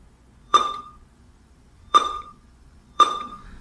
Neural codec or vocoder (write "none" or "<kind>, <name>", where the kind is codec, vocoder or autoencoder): vocoder, Vocos